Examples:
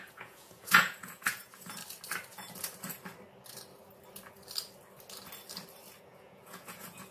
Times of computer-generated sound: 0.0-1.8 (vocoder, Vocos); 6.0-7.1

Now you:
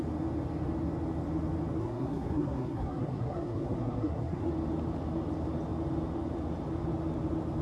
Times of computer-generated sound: 1.8-4.5 (codec, SNAC)

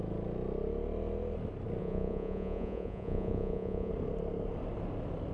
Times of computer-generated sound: 1.8-3.9 (vocoder, Vocos)

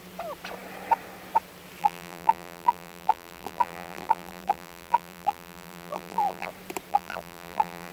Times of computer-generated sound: 1.8-6.5 (vocoder, BigVGAN v2); 6.9-7.9

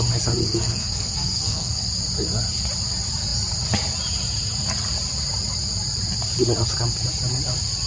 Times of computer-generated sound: 0.4-1.9 (codec, SNAC)